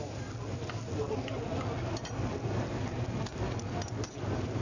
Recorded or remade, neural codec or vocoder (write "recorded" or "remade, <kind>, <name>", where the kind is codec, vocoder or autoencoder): recorded